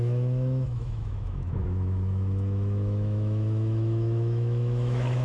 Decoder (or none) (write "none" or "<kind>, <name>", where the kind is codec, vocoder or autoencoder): autoencoder, DAC-VAE